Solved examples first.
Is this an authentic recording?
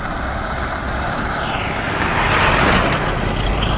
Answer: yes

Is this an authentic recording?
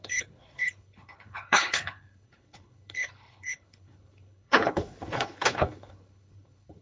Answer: no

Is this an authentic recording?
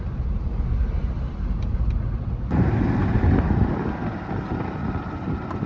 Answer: yes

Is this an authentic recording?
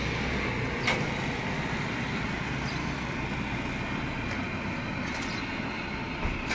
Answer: yes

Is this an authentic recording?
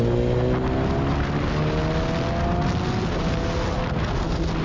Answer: yes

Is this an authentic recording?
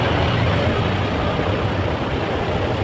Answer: yes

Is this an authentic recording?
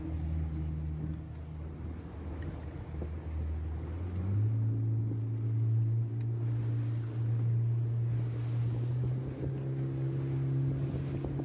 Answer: yes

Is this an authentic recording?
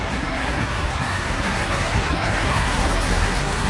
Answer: no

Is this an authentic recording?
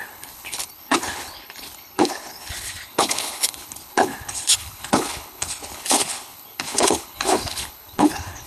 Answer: no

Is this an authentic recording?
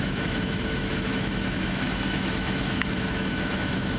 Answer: no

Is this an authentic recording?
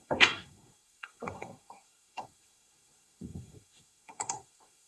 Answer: no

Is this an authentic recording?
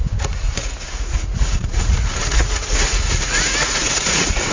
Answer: no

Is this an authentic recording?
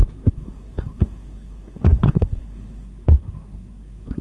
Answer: no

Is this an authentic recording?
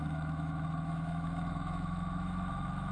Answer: no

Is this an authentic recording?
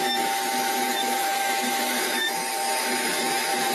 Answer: no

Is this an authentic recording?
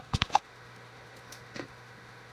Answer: no